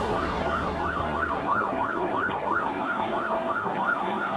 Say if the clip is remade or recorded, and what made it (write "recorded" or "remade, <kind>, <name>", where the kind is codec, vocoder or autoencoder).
remade, codec, SNAC